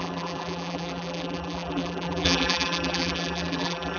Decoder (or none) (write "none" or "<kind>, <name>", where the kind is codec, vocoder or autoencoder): vocoder, BigVGAN v2